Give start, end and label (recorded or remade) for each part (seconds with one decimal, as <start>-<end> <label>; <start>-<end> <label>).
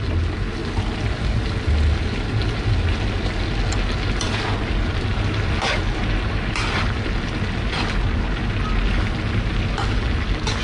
0.0-10.6 recorded